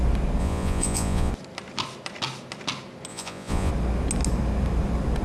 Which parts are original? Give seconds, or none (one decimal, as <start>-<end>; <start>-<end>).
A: 0.0-0.4; 1.3-3.1; 3.7-5.2